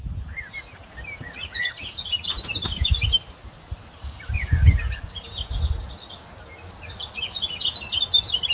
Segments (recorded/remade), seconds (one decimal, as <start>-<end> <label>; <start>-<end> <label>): 0.0-8.5 recorded